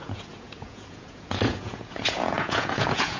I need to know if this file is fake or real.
fake